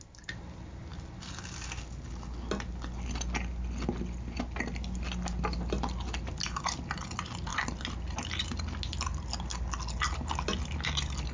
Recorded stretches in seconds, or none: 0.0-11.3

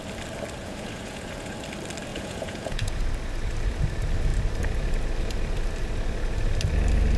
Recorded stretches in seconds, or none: 0.0-0.6; 1.5-2.1; 3.0-7.2

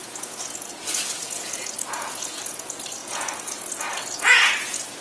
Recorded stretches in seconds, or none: none

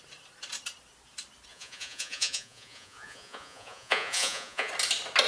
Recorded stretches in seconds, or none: 0.0-1.5; 4.7-5.3

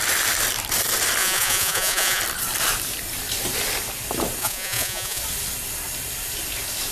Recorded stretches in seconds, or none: 0.0-1.2; 2.2-4.4; 5.2-6.9

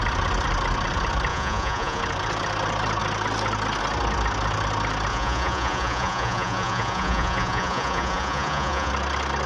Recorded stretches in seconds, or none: 0.0-1.3; 2.0-5.1; 8.9-9.5

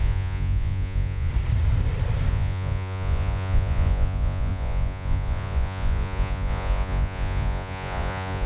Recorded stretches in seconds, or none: 1.3-2.3

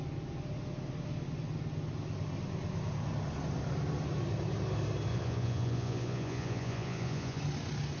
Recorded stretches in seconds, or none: 0.0-5.1; 7.4-8.0